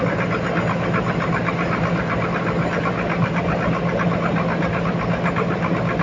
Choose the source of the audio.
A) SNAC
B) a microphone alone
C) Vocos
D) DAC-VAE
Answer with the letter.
B